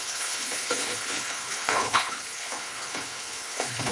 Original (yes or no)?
no